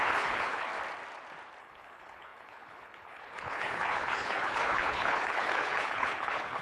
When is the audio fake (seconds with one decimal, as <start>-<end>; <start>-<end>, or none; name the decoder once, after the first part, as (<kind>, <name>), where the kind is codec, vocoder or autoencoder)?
0.0-0.7 (codec, HILCodec); 1.6-6.6